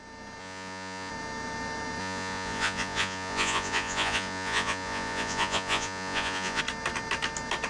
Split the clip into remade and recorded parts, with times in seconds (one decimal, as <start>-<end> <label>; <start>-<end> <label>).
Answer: 0.0-0.4 recorded; 0.4-1.1 remade; 1.1-2.0 recorded; 2.0-6.6 remade; 6.6-7.7 recorded